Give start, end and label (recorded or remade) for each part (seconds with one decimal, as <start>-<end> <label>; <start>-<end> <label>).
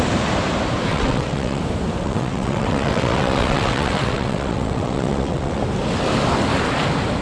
0.0-0.9 recorded; 0.9-1.6 remade; 1.6-2.0 recorded; 2.0-5.6 remade; 5.6-7.2 recorded